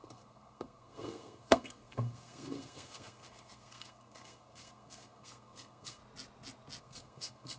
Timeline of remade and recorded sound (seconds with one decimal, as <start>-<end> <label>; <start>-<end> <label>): 0.0-6.0 remade; 6.0-6.8 recorded; 6.8-7.6 remade